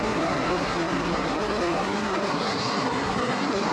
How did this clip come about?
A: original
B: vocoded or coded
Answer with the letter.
B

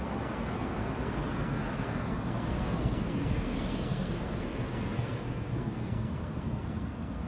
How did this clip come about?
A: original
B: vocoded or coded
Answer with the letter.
B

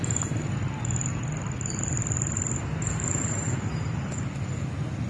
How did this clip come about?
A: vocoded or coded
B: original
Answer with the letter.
B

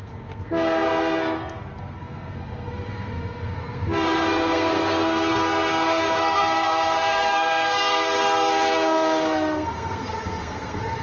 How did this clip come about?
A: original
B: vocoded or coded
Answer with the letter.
B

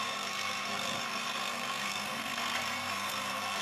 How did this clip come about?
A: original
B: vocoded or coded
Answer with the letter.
B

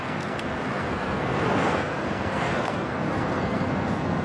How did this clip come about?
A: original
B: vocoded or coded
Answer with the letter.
B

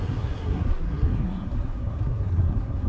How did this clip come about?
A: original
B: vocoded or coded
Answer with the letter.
B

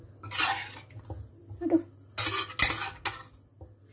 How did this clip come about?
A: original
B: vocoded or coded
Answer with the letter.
A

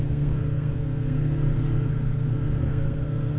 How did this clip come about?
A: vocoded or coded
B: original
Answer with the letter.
A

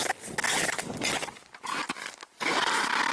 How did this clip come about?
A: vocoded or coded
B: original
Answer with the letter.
B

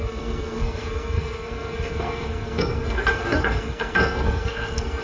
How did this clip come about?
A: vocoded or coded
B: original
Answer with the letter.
A